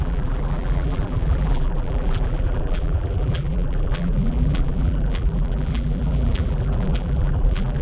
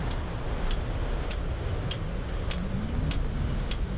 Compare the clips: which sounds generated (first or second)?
first